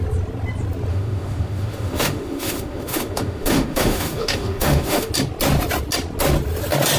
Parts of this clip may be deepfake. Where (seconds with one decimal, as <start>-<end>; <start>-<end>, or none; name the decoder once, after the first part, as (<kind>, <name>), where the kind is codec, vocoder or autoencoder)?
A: 0.9-5.1 (autoencoder, DAC-VAE)